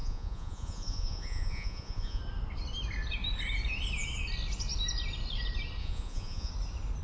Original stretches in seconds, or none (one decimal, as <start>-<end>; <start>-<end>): 2.2-5.8; 6.5-7.0